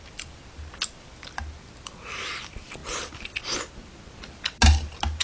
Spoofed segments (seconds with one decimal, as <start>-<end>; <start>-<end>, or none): none